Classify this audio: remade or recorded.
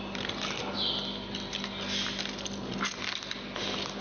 recorded